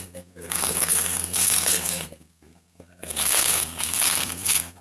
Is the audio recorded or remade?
remade